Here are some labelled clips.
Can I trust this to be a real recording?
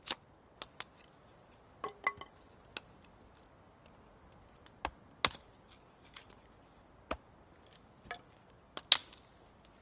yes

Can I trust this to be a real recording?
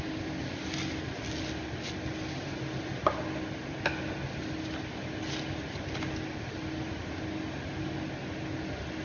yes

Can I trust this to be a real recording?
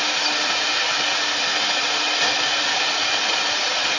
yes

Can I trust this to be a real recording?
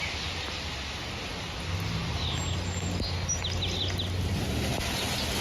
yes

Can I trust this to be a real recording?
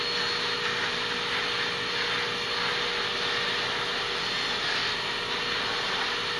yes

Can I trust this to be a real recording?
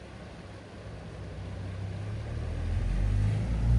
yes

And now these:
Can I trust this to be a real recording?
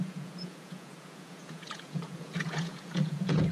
no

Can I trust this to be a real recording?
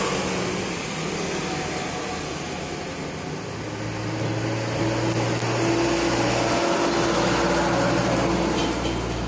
yes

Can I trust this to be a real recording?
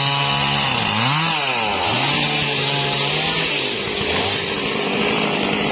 yes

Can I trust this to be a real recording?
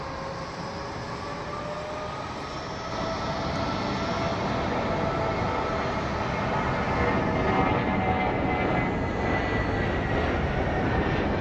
yes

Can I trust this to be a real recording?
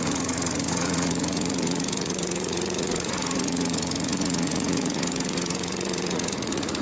no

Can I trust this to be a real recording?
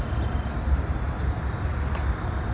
yes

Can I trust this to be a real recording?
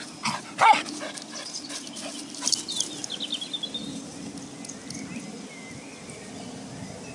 yes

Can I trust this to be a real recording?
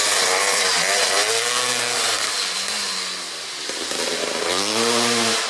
yes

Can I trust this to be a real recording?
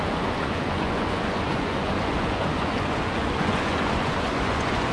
no